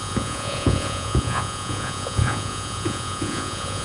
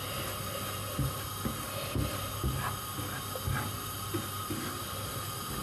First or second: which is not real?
first